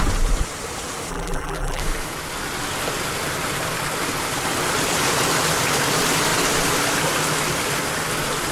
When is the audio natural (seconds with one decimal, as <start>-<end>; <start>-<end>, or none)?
0.0-1.1; 1.8-8.5

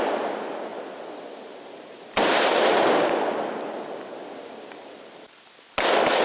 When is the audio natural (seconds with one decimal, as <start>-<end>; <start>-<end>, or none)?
0.0-6.2